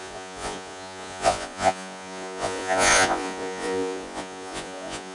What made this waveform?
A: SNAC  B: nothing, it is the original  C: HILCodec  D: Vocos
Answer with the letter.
D